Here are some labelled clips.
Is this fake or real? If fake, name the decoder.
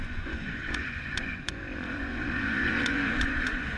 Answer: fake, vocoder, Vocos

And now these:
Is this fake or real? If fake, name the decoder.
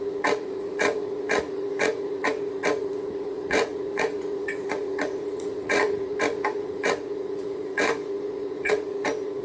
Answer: fake, vocoder, Vocos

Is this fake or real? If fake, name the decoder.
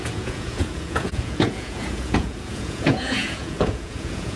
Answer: fake, vocoder, Vocos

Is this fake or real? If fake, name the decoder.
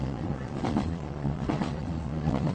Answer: fake, vocoder, Vocos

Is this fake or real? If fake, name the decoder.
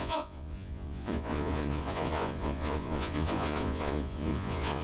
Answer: fake, vocoder, Vocos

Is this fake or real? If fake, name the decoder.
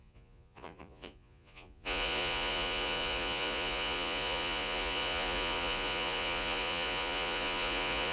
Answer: fake, vocoder, Vocos